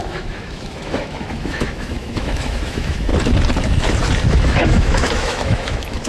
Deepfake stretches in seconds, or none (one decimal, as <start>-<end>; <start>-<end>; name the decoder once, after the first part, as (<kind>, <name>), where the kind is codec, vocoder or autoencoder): 0.0-3.1 (autoencoder, DAC-VAE); 4.3-6.1